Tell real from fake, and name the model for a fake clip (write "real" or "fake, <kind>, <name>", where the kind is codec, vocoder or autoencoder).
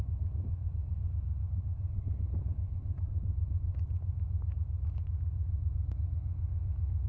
real